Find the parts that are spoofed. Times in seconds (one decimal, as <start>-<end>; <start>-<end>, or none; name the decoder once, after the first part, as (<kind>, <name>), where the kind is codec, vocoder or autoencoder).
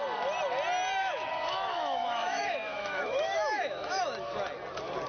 1.0-4.0 (autoencoder, DAC-VAE)